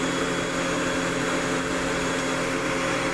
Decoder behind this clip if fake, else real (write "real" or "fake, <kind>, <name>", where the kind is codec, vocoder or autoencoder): real